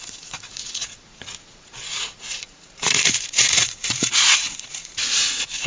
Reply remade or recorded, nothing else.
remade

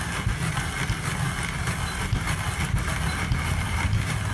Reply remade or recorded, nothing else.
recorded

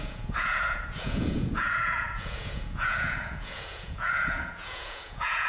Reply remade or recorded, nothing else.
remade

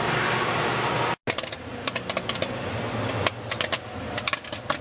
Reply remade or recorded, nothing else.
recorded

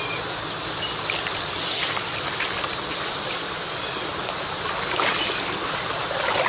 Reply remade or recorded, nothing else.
recorded